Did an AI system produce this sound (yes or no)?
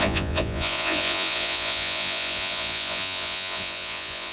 yes